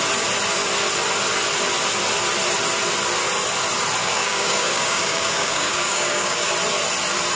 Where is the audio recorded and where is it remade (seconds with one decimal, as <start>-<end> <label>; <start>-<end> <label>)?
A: 0.0-4.0 recorded; 4.0-6.5 remade; 6.5-7.4 recorded